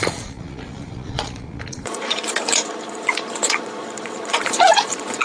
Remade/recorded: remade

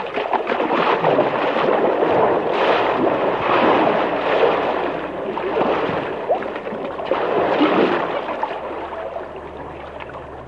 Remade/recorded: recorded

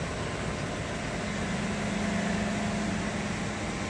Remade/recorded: recorded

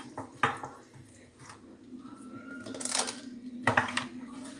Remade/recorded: recorded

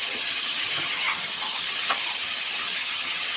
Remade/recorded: remade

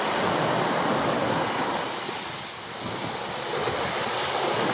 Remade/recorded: recorded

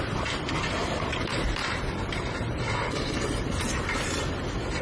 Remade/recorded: recorded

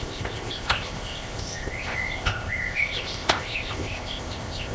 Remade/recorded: remade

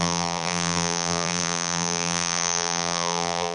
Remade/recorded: remade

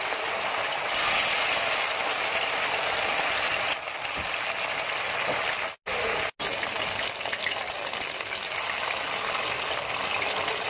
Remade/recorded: recorded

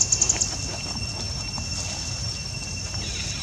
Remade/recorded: recorded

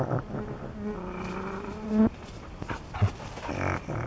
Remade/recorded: recorded